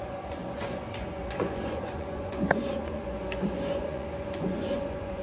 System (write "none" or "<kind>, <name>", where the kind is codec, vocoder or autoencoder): vocoder, Vocos